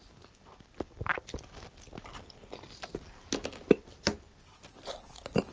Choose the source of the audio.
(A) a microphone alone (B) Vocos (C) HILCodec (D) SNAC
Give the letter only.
A